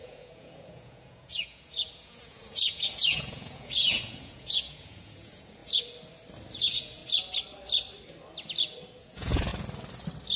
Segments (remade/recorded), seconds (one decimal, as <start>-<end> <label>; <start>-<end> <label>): 0.0-5.6 remade; 5.6-6.6 recorded; 6.6-7.0 remade; 7.0-9.0 recorded; 9.0-9.5 remade; 9.5-10.4 recorded